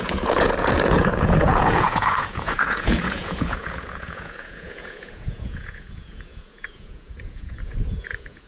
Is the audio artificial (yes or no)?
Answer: yes